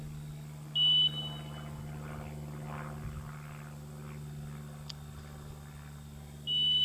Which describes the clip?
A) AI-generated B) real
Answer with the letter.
B